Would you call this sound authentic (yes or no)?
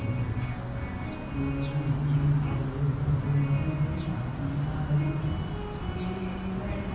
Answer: yes